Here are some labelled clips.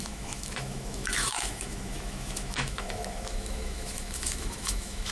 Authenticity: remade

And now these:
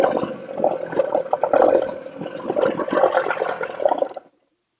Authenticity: recorded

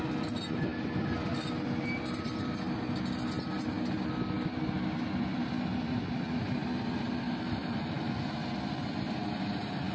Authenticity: recorded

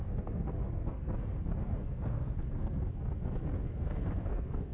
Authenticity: remade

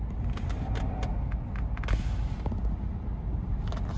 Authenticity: recorded